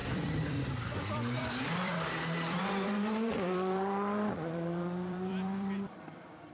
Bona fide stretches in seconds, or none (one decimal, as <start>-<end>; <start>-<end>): none